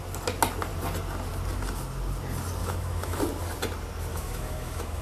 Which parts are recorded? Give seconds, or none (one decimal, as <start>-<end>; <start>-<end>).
0.0-2.6; 3.2-4.1